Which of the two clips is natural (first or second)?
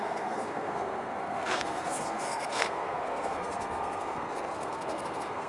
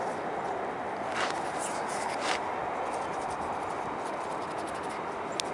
second